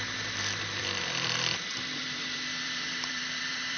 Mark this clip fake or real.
fake